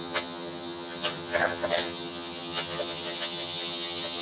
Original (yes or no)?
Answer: no